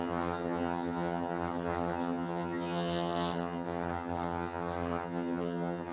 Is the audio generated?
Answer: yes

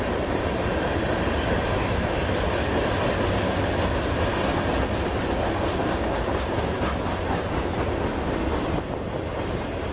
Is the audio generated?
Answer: no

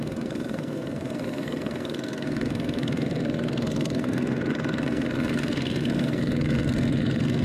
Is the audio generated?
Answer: yes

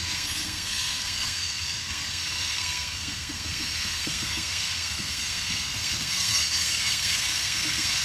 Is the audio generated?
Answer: yes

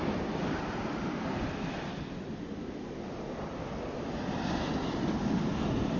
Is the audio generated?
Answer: no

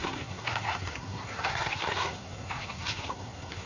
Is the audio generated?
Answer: yes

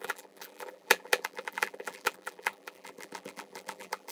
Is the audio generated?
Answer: yes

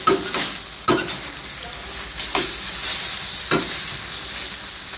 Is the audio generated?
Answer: no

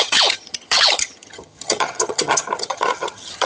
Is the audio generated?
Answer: yes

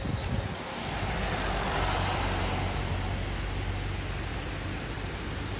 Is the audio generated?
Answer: no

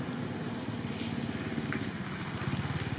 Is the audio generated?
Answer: no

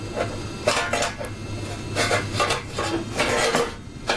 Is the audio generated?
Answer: no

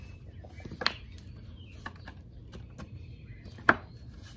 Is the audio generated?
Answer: no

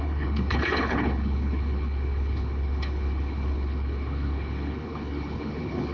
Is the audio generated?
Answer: yes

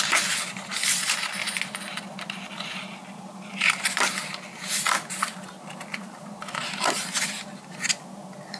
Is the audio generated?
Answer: no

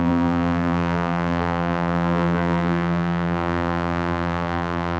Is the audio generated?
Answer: yes